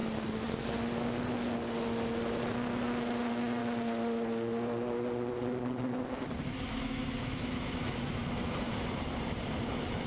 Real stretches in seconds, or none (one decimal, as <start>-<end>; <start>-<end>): 0.0-3.0; 3.6-6.7; 8.7-9.7